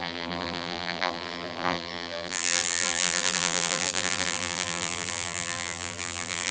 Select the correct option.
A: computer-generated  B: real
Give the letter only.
A